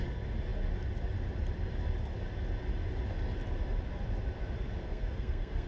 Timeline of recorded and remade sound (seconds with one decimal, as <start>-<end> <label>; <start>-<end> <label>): 0.0-4.8 recorded; 4.8-5.7 remade